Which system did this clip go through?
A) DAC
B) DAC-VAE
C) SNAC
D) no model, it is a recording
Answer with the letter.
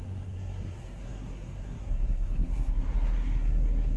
C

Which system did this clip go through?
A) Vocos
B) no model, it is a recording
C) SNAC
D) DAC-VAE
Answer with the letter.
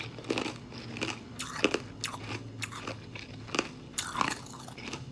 B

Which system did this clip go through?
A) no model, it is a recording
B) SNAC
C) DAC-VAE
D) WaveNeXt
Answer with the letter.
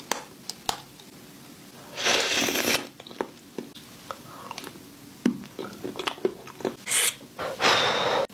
A